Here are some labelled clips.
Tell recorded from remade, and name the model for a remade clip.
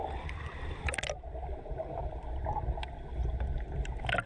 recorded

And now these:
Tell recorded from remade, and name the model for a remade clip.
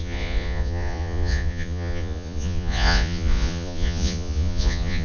remade, vocoder, Vocos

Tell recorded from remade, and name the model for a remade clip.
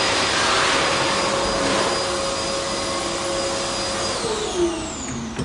recorded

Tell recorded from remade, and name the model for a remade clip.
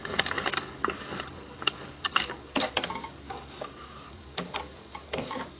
remade, codec, DAC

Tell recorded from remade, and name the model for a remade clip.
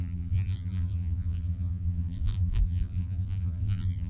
remade, vocoder, BigVGAN v2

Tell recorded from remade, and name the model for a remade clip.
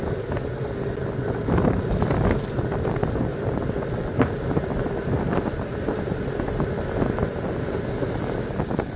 recorded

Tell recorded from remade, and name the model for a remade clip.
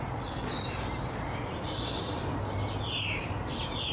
recorded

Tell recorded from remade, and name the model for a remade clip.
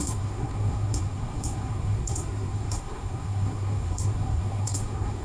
remade, codec, SNAC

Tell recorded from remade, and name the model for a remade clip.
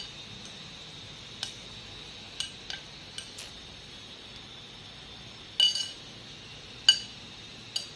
recorded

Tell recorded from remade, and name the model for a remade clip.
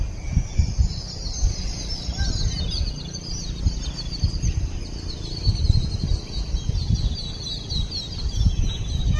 recorded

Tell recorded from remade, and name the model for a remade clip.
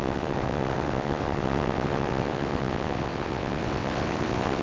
remade, vocoder, WaveNeXt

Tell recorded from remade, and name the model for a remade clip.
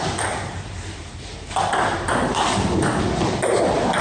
recorded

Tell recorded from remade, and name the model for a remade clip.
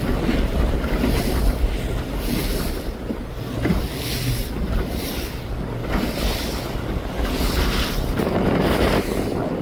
recorded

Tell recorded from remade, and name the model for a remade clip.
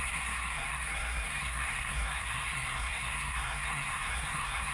remade, codec, SNAC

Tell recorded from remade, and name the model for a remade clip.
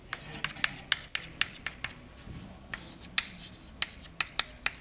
recorded